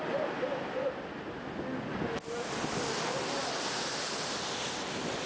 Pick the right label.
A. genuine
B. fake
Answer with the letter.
A